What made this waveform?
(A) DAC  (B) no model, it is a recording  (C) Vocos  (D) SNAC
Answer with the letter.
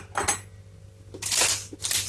B